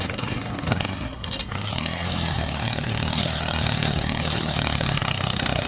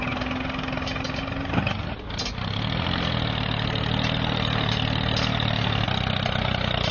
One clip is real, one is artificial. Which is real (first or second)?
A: second